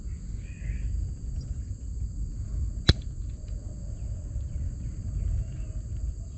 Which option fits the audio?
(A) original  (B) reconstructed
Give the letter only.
A